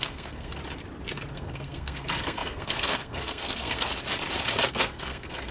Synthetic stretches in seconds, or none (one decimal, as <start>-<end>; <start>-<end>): 0.0-0.6; 1.3-3.9; 4.7-5.5